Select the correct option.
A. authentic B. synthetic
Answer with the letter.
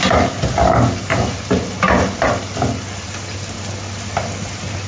A